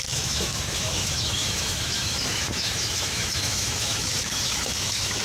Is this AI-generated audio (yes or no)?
yes